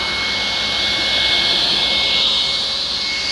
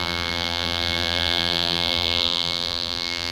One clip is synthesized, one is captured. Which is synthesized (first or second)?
second